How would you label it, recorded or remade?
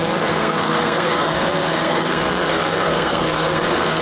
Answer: remade